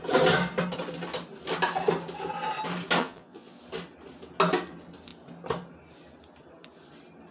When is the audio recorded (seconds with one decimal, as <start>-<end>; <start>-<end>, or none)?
0.0-3.0; 3.6-7.3